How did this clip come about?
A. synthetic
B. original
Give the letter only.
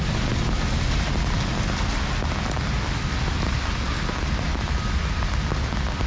B